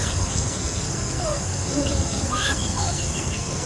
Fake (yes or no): yes